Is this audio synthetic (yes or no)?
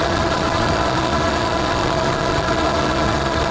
yes